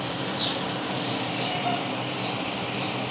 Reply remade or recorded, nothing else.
recorded